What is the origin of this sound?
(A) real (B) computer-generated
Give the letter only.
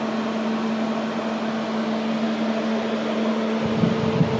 A